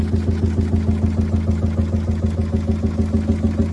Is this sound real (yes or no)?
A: yes